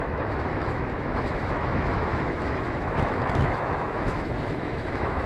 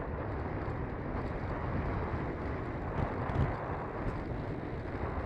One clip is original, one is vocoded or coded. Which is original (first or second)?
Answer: second